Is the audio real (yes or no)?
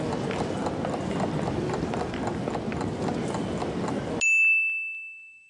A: yes